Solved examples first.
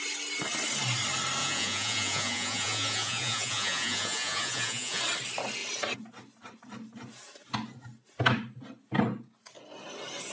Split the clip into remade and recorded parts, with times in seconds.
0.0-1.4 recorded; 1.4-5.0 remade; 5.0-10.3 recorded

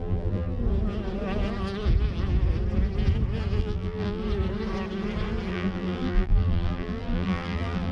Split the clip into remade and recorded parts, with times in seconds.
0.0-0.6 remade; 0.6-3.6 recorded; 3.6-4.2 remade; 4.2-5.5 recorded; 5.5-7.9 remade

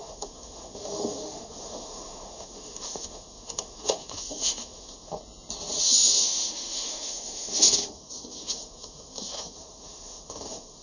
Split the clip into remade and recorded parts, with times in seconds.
0.0-5.2 remade; 5.2-5.8 recorded; 5.8-10.8 remade